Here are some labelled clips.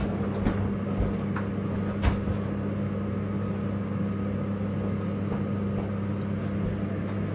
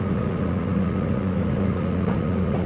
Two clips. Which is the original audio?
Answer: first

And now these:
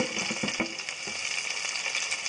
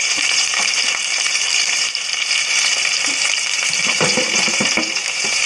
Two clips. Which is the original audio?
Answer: first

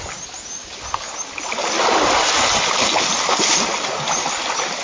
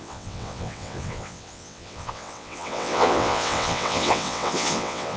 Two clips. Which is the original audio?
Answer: first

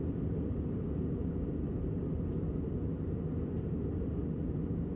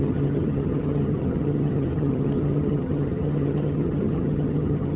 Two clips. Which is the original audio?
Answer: first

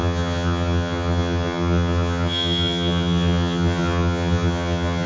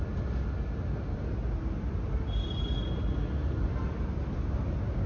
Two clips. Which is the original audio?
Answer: second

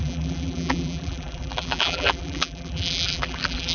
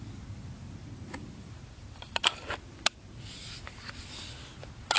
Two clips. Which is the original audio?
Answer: second